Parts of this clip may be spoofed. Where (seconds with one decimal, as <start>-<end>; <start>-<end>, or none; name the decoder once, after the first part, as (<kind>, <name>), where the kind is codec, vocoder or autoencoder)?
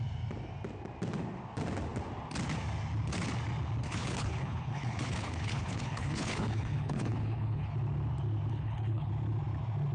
3.8-7.7 (codec, HILCodec); 8.5-9.1